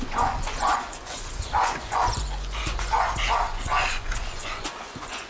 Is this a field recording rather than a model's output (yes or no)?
no